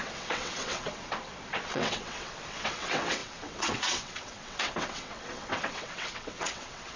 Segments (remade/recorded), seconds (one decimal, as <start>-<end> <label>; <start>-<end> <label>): 0.0-7.0 remade